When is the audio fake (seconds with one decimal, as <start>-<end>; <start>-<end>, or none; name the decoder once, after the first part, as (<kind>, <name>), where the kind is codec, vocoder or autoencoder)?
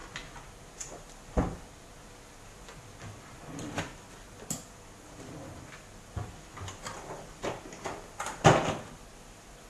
none